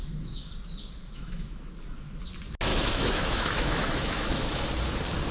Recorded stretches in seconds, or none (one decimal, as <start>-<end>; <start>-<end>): 0.5-1.0; 1.7-2.7; 4.6-5.3